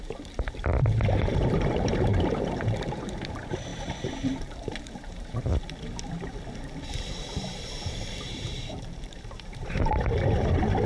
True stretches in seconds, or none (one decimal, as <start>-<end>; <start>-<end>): 5.5-7.6